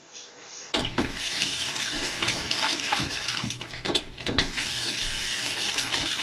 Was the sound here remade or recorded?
remade